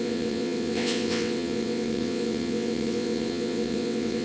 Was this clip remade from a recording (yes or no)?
yes